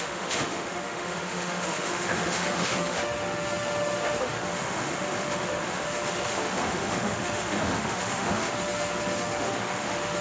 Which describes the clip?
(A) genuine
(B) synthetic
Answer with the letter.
B